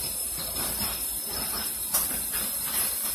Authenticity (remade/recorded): recorded